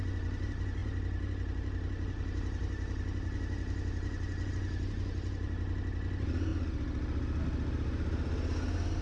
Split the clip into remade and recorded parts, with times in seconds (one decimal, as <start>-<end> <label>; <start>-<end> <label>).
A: 0.0-9.0 recorded